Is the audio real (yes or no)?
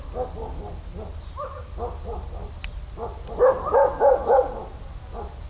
yes